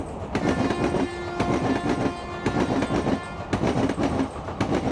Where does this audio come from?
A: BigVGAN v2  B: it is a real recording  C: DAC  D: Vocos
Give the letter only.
B